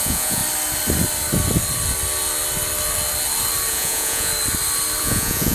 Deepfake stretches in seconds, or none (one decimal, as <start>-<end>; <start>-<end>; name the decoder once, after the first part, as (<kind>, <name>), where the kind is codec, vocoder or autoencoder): 0.0-0.4 (vocoder, Vocos); 3.7-4.3; 5.0-5.5